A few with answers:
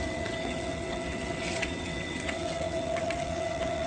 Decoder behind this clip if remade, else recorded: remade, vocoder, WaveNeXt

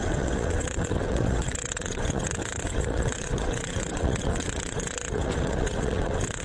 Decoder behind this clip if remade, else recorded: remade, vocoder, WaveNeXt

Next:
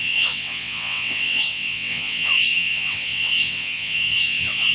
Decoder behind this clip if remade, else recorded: remade, vocoder, WaveNeXt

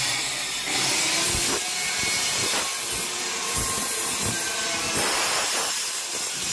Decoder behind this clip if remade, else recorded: recorded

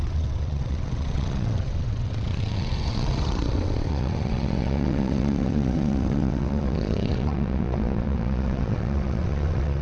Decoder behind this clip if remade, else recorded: remade, vocoder, WaveNeXt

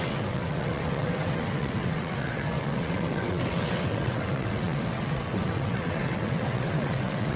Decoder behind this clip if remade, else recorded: remade, vocoder, WaveNeXt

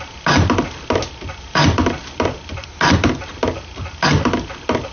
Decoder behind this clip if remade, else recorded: recorded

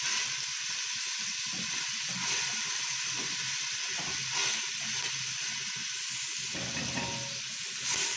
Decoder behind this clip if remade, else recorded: recorded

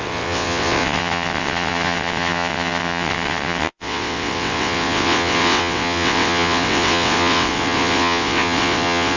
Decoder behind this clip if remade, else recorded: remade, vocoder, WaveNeXt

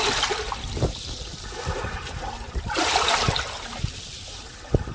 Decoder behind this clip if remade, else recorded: recorded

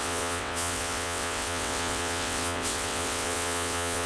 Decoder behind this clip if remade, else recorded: remade, vocoder, WaveNeXt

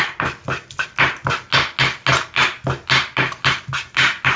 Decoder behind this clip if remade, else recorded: recorded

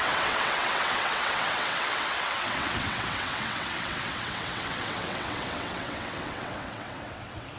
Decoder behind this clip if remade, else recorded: remade, vocoder, WaveNeXt